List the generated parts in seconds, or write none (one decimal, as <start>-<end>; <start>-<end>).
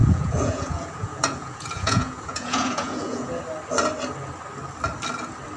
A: 0.0-3.4